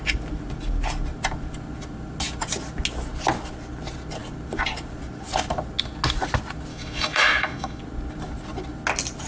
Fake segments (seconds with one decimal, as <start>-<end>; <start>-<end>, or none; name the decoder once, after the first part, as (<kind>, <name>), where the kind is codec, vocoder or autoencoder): 6.7-7.8 (autoencoder, DAC-VAE)